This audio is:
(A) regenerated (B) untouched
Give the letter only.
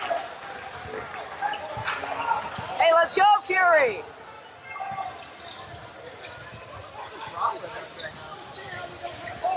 B